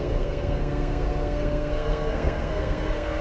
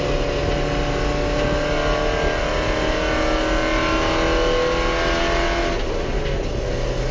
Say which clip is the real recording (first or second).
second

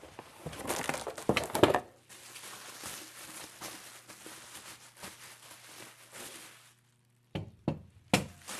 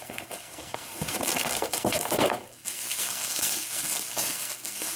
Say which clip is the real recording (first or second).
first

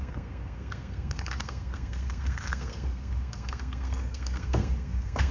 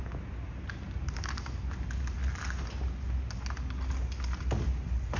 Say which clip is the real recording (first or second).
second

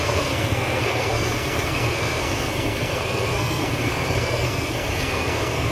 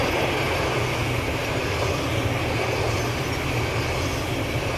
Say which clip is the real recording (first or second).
second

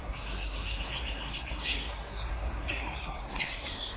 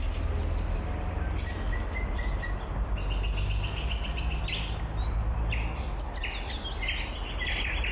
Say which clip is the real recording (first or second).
second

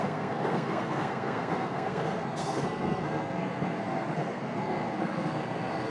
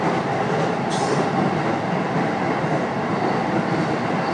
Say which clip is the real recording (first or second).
second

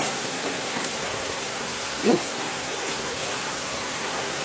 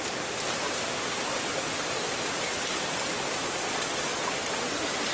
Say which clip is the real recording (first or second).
second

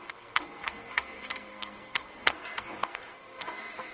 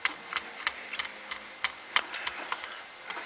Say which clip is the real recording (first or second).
second